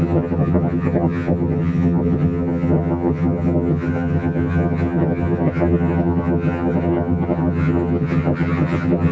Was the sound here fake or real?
fake